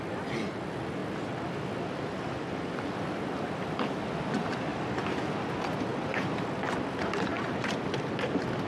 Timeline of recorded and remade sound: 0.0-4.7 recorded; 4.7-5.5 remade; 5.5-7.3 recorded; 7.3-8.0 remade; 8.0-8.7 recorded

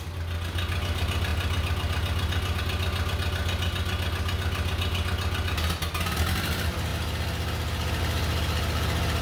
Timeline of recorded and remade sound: 0.0-9.2 recorded

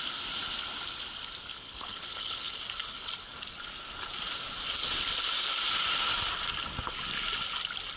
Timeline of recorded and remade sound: 0.0-1.5 recorded; 1.5-2.6 remade; 2.6-8.0 recorded